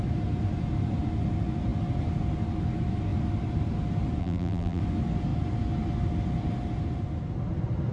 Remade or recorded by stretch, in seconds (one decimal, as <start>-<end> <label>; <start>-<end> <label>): 0.0-4.2 recorded; 4.2-4.8 remade; 4.8-7.9 recorded